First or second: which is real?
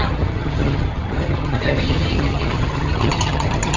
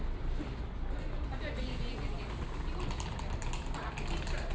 second